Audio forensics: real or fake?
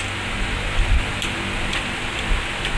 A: real